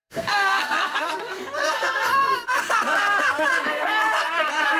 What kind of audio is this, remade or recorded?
remade